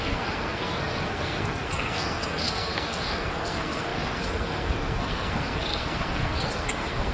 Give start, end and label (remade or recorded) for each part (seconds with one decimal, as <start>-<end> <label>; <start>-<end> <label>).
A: 0.0-7.1 remade